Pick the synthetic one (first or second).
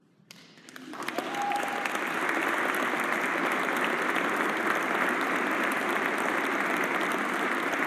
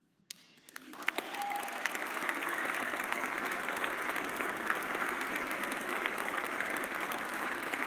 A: second